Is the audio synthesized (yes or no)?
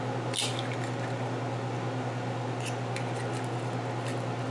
no